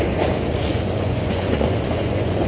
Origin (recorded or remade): remade